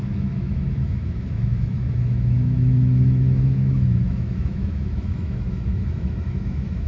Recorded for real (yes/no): no